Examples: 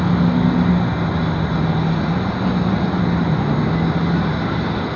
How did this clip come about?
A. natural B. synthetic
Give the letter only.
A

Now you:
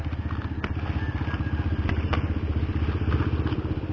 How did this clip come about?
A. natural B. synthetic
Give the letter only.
A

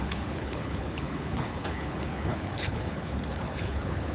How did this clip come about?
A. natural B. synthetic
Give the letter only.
B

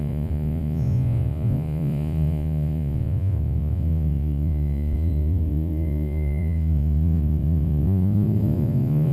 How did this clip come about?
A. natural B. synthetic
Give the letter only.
B